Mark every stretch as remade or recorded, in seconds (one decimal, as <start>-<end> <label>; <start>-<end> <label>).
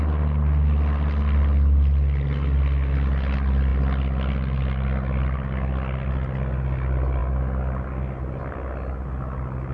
0.0-9.7 recorded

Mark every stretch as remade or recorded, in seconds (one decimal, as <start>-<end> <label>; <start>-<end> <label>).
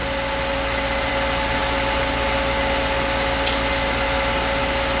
0.0-5.0 recorded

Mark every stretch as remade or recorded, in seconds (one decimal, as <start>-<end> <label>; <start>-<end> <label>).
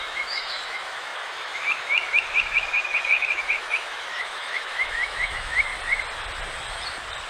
0.0-5.7 remade; 5.7-7.3 recorded